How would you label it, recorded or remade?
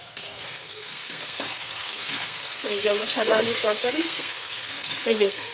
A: remade